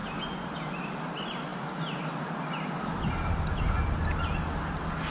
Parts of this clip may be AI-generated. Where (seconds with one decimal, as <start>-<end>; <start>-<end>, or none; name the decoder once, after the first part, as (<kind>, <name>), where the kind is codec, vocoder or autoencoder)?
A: none